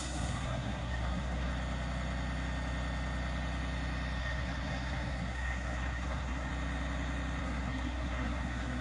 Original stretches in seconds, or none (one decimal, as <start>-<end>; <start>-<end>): 1.5-4.2; 6.5-7.4